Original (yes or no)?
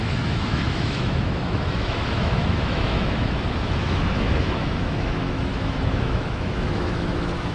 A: no